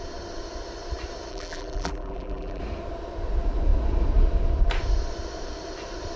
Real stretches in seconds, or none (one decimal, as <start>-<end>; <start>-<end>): 0.0-1.3; 2.6-6.2